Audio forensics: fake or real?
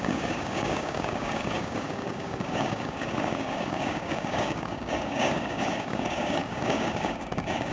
fake